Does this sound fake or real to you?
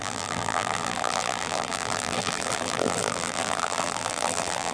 fake